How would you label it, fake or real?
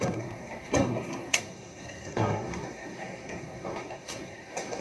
fake